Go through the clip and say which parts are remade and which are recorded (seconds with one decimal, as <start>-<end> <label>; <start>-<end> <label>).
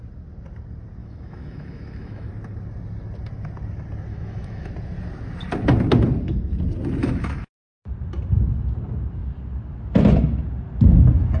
0.0-1.0 recorded; 1.0-2.3 remade; 2.3-4.1 recorded; 4.1-4.7 remade; 4.7-7.0 recorded; 7.0-7.7 remade; 7.7-11.4 recorded